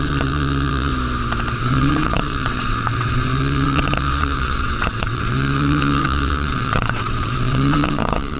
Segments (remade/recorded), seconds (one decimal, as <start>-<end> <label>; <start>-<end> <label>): 0.0-0.9 remade; 0.9-1.6 recorded; 1.6-8.4 remade